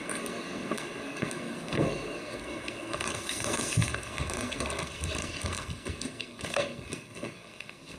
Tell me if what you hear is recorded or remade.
remade